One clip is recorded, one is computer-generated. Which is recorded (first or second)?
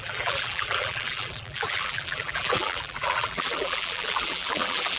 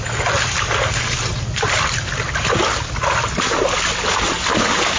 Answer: second